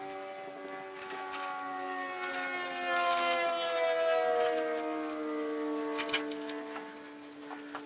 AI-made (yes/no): no